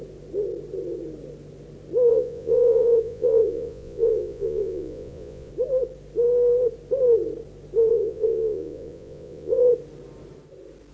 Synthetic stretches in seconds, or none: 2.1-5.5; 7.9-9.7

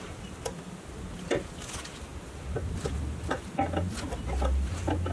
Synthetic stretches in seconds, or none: none